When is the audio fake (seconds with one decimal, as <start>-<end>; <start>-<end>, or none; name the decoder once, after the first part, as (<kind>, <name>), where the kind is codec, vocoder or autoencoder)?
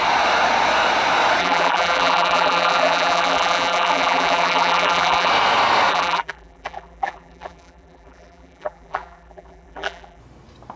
1.4-5.3 (vocoder, BigVGAN v2); 5.9-10.2